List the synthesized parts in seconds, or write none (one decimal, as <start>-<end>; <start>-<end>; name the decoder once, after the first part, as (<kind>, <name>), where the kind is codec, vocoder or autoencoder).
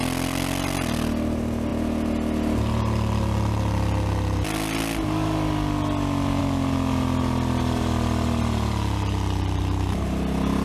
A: none